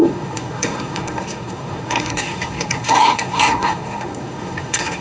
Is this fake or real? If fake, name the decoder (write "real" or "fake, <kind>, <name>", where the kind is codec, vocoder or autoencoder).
fake, codec, SNAC